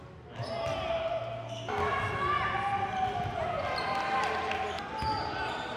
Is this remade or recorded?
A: recorded